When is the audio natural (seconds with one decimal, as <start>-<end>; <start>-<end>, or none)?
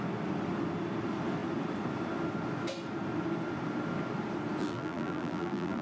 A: 0.0-4.6